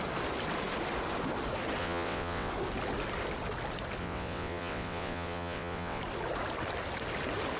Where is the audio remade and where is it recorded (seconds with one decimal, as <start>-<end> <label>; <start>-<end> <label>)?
0.0-1.8 recorded; 1.8-2.5 remade; 2.5-4.0 recorded; 4.0-6.0 remade; 6.0-7.6 recorded